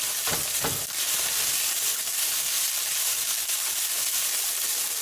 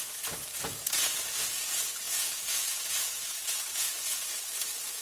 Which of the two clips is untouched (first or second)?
first